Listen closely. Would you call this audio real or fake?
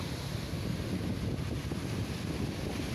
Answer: real